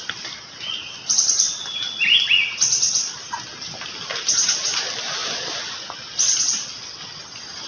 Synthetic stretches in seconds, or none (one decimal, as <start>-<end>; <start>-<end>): none